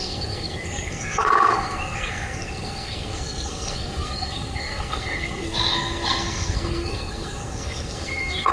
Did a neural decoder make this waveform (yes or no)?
yes